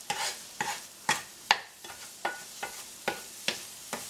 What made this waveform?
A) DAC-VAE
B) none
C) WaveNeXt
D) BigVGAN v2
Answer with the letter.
D